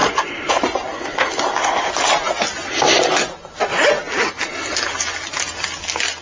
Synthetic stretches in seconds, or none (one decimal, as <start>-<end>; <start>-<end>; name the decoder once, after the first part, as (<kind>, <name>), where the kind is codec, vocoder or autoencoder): none

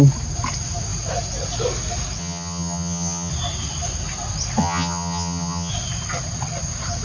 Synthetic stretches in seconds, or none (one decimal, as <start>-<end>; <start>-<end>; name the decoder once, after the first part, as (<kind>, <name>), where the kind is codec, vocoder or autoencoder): 2.2-3.3 (vocoder, HiFi-GAN); 4.6-5.7

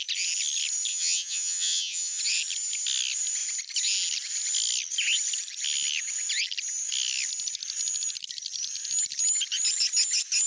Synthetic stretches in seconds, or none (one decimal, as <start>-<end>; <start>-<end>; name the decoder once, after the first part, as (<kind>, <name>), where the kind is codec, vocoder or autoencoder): 0.9-2.2 (vocoder, HiFi-GAN)

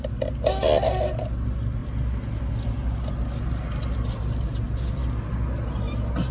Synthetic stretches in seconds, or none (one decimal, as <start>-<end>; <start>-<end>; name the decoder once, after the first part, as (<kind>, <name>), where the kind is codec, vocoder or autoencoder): none